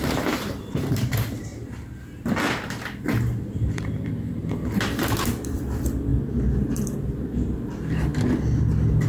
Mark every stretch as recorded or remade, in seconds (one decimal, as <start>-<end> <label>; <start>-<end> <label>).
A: 0.0-1.5 remade; 1.5-2.0 recorded; 2.0-4.4 remade; 4.4-5.0 recorded; 5.0-8.1 remade; 8.1-8.7 recorded; 8.7-9.1 remade